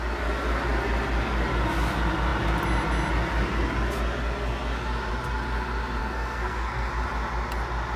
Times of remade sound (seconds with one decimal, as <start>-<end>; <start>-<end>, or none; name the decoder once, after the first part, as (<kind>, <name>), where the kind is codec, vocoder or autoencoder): 6.0-6.9 (codec, SNAC)